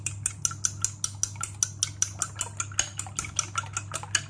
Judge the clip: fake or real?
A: real